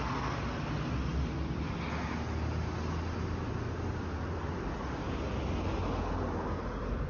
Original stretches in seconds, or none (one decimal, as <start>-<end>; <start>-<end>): 0.0-7.1